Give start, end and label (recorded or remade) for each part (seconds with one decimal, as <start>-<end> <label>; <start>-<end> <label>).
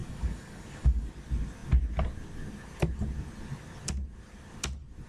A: 0.0-1.1 remade; 1.1-5.1 recorded